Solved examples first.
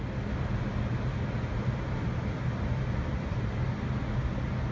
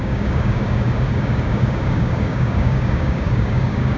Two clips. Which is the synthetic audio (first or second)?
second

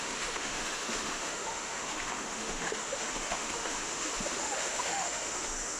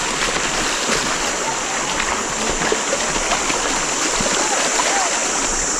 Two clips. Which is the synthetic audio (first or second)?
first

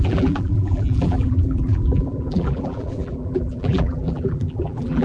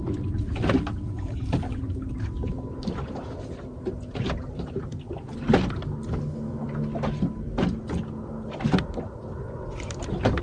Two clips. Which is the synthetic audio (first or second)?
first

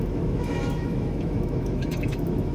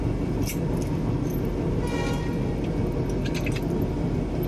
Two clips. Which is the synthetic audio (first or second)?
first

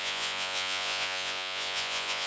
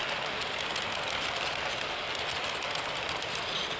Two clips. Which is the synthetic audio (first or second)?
first